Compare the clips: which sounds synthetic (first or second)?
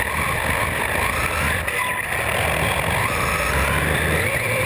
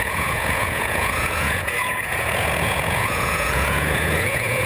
second